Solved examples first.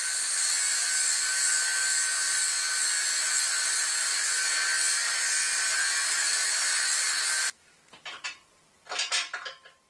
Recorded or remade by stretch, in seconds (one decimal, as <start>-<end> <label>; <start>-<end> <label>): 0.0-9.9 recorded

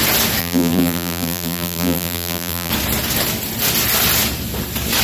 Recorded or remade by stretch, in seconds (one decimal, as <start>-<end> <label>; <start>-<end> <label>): 0.0-0.4 recorded; 0.4-2.7 remade; 2.7-5.0 recorded

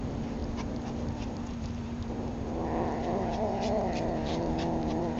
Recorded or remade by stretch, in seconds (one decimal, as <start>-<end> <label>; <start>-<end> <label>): 0.0-5.2 remade

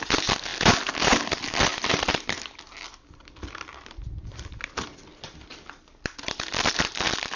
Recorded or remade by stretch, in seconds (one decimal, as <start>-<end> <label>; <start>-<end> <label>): 0.0-1.7 recorded; 1.7-3.7 remade; 3.7-4.2 recorded; 4.2-7.0 remade; 7.0-7.4 recorded

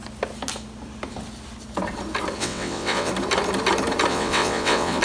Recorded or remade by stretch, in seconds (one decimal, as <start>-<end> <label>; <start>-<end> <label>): 0.0-2.4 recorded; 2.4-3.1 remade; 3.1-4.1 recorded; 4.1-5.0 remade

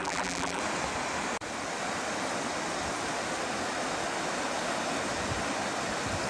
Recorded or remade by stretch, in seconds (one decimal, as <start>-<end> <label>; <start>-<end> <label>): 0.0-0.6 remade; 0.6-6.3 recorded

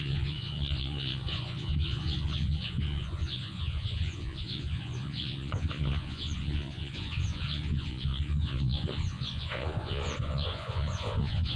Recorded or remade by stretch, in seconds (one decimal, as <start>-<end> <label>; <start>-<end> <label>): 0.0-11.6 remade